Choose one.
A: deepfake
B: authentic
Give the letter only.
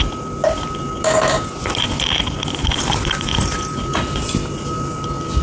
B